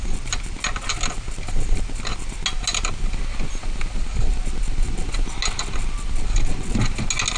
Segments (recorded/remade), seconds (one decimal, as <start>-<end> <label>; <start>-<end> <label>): 0.0-7.4 recorded